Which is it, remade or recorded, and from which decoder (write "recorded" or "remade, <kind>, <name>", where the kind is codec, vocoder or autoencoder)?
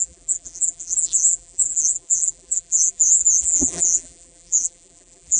remade, vocoder, BigVGAN v2